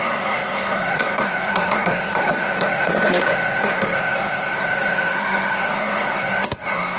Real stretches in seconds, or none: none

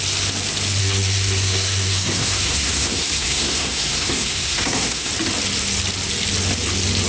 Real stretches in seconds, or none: 0.0-0.8; 5.1-7.1

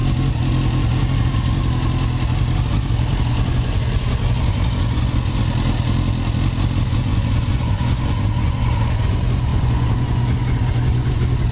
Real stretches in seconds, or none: 0.0-3.2; 5.4-6.8

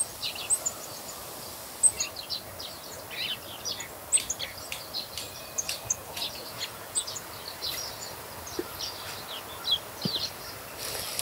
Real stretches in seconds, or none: 0.0-6.0; 7.3-11.2